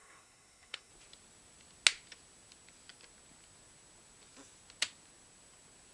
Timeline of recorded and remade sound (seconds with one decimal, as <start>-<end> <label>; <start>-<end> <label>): 0.0-0.9 remade; 0.9-5.9 recorded

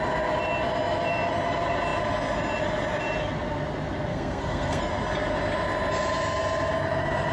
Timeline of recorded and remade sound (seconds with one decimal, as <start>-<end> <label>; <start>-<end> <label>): 0.0-4.1 recorded; 4.1-4.9 remade; 4.9-7.3 recorded

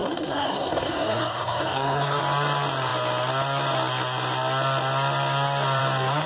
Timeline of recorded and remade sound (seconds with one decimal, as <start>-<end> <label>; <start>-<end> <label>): 0.0-2.2 remade; 2.2-6.3 recorded

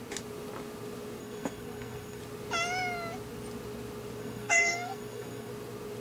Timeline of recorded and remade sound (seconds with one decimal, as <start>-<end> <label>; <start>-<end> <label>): 0.0-1.2 recorded; 1.2-2.2 remade; 2.2-4.2 recorded; 4.2-5.5 remade; 5.5-6.0 recorded

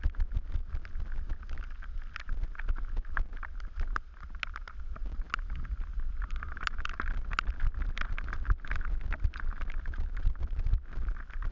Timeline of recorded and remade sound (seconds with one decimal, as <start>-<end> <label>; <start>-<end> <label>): 0.0-11.5 recorded

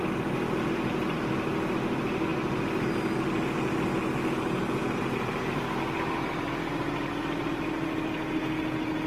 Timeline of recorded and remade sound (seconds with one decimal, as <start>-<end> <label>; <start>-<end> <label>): 0.0-9.1 recorded

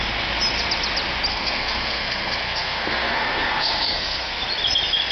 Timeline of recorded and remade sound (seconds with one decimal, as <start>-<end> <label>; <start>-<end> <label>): 0.0-1.3 recorded; 1.3-4.4 remade; 4.4-5.1 recorded